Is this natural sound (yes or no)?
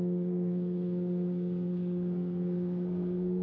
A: no